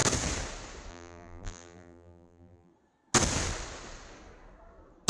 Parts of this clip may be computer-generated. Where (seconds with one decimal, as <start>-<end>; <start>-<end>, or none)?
0.9-2.7